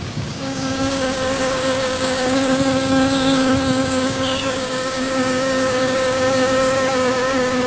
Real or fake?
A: fake